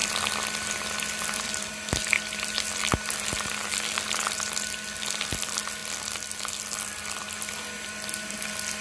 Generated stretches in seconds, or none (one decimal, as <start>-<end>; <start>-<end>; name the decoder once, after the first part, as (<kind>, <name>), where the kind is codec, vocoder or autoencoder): none